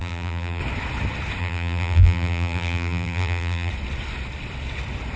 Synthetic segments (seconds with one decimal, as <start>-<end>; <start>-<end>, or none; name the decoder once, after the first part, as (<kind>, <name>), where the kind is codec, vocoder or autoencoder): 0.0-0.6 (vocoder, BigVGAN v2); 1.4-3.7